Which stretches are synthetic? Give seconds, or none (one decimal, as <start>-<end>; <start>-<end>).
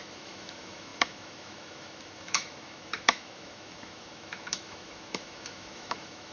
0.0-6.3